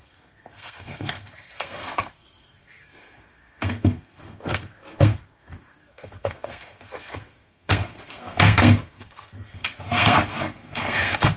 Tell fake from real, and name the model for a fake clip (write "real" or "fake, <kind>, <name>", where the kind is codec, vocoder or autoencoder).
fake, codec, SNAC